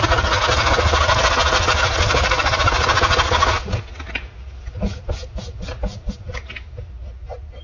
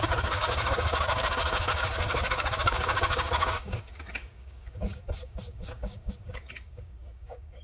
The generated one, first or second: second